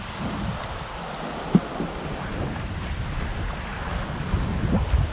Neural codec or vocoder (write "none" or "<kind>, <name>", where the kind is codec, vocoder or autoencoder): none